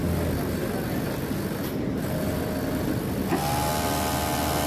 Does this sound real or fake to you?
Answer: real